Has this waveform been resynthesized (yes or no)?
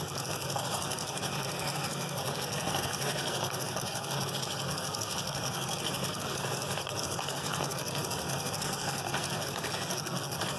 yes